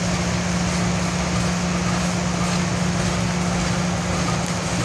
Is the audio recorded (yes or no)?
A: yes